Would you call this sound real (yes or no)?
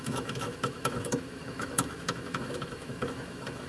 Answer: no